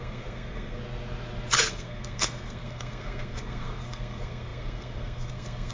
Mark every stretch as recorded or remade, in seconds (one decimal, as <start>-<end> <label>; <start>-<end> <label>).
0.0-0.8 remade; 0.8-1.6 recorded; 1.6-5.7 remade